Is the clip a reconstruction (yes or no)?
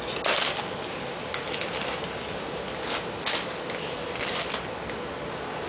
no